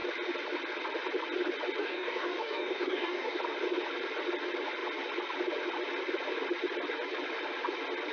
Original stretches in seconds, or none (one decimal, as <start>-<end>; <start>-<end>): 0.0-1.8; 3.4-8.1